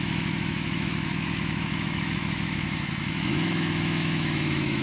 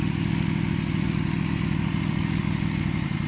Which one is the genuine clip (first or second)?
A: second